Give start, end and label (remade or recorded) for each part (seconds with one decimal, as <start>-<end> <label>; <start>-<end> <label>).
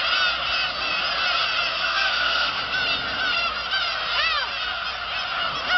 0.0-1.7 recorded; 1.7-2.6 remade; 2.6-5.8 recorded